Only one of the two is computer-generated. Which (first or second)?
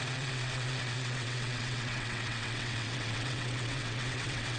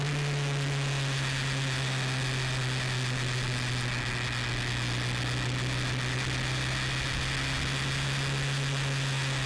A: first